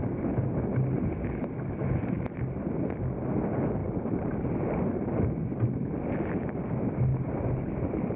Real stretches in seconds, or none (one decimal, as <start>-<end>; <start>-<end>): 0.0-3.8; 4.9-7.1; 7.7-8.2